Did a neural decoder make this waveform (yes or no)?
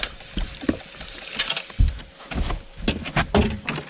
no